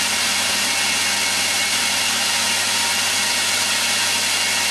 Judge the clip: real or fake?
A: real